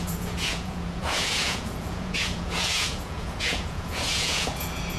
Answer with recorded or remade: remade